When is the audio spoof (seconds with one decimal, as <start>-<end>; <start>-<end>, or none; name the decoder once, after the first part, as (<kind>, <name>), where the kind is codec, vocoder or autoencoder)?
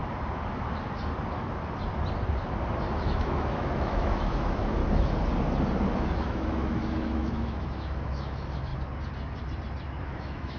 2.9-4.8 (autoencoder, DAC-VAE); 6.0-8.7; 10.0-10.6